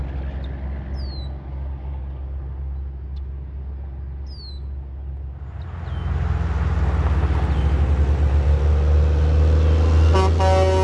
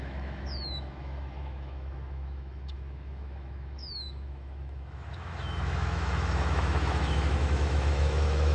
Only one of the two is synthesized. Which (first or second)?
second